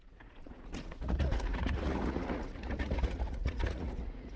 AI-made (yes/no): yes